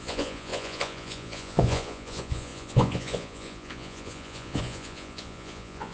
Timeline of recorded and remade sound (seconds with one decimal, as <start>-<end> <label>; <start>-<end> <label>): 0.0-5.9 remade